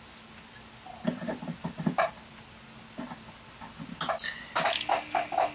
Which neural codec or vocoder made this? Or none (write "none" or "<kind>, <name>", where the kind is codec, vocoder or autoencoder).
none